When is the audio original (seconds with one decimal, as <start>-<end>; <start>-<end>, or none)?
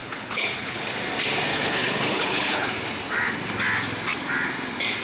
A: 0.8-1.5; 2.7-5.0